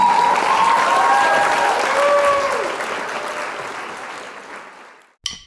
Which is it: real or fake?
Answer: real